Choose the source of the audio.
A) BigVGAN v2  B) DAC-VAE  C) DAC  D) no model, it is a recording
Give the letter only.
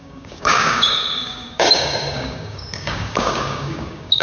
C